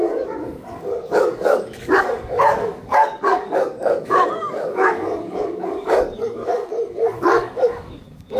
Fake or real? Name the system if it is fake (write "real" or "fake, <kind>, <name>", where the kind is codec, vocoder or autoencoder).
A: fake, codec, DAC